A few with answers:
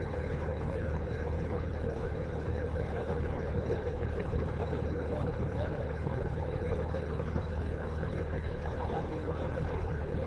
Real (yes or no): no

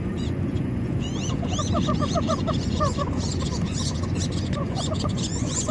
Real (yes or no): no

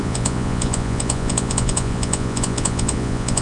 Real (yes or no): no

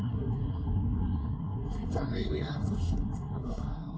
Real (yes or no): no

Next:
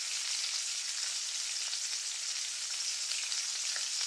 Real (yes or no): yes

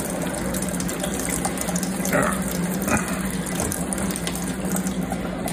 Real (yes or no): yes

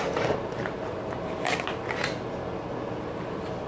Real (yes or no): yes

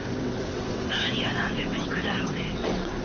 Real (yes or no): no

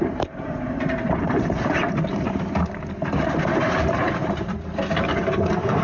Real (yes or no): no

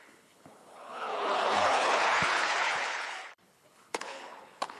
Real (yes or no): no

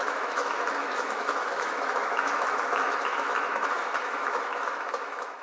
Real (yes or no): no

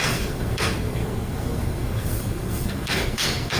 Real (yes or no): no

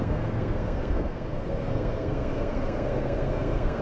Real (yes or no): no